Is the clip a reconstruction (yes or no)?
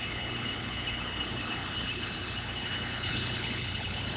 yes